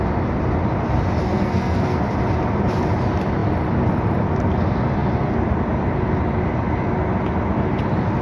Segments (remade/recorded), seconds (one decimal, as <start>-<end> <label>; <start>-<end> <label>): 0.0-1.2 recorded; 1.2-2.0 remade; 2.0-8.2 recorded